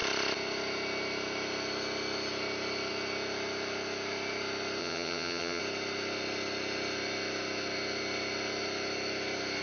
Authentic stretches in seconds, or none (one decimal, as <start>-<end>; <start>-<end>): 0.0-4.8; 5.6-9.6